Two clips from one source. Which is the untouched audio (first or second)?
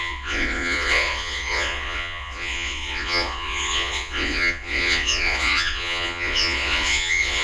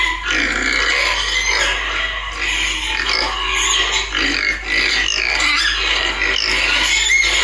second